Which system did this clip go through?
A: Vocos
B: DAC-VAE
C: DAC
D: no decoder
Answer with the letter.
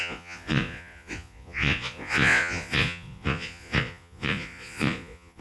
A